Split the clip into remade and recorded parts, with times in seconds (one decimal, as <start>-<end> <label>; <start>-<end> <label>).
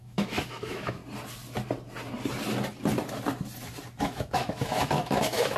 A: 0.0-1.0 remade; 1.0-4.0 recorded; 4.0-5.6 remade